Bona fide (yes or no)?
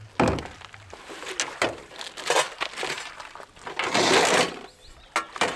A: yes